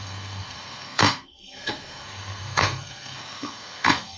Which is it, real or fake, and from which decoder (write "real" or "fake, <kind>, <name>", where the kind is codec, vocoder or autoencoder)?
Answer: fake, codec, SNAC